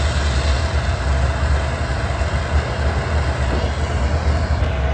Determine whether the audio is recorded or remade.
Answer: recorded